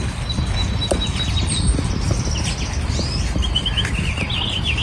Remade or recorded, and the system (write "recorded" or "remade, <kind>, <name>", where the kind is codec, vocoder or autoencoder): recorded